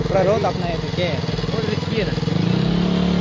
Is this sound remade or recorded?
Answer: recorded